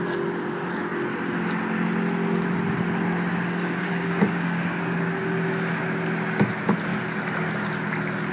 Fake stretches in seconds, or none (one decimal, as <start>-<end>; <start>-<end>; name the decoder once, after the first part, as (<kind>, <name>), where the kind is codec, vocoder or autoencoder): 3.6-5.8 (codec, DAC)